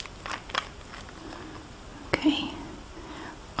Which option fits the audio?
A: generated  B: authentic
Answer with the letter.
B